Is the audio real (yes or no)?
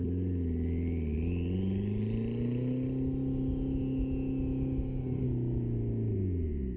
yes